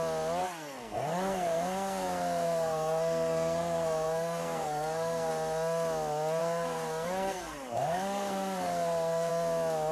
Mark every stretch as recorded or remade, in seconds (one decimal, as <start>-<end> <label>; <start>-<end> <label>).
0.0-0.4 recorded; 0.4-5.3 remade; 5.3-6.4 recorded; 6.4-9.3 remade; 9.3-9.9 recorded